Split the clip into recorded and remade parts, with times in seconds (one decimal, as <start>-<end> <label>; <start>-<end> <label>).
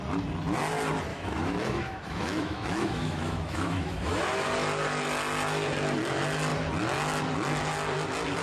0.0-1.1 recorded; 1.1-4.2 remade; 4.2-8.4 recorded